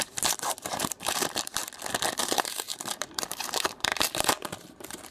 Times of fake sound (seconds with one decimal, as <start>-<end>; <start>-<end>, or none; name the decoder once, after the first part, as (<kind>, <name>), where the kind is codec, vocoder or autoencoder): 0.0-1.6 (vocoder, BigVGAN v2); 2.2-5.1